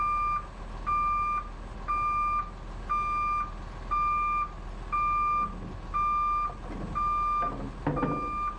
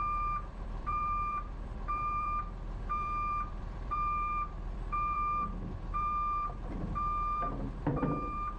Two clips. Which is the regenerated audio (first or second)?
second